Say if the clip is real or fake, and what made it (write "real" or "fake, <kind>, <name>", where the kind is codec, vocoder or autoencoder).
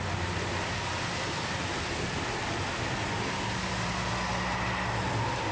real